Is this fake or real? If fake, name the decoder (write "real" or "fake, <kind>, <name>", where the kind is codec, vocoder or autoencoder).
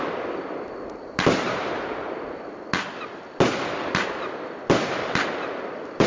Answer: real